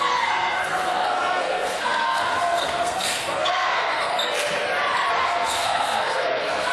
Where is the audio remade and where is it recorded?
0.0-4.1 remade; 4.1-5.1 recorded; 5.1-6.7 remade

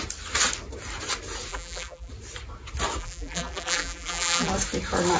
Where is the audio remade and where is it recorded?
0.0-1.5 recorded; 1.5-2.1 remade; 2.1-3.0 recorded; 3.0-4.5 remade; 4.5-5.2 recorded

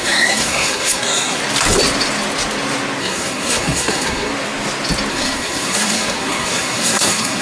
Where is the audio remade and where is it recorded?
0.0-1.4 remade; 1.4-3.0 recorded; 3.0-4.3 remade; 4.3-5.1 recorded; 5.1-7.4 remade

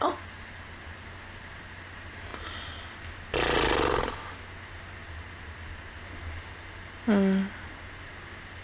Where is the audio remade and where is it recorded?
0.0-8.6 recorded

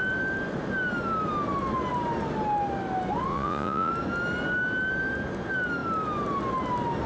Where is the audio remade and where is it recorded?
0.0-3.3 recorded; 3.3-3.9 remade; 3.9-7.1 recorded

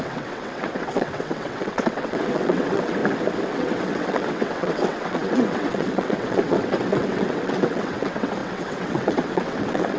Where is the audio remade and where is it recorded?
0.0-3.0 remade; 3.0-3.5 recorded; 3.5-10.0 remade

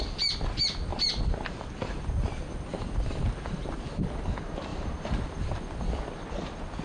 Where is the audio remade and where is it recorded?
0.0-0.9 recorded; 0.9-1.7 remade; 1.7-2.7 recorded; 2.7-3.7 remade; 3.7-4.7 recorded; 4.7-5.5 remade; 5.5-6.8 recorded

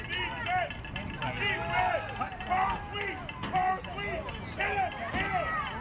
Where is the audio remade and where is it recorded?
0.0-5.8 recorded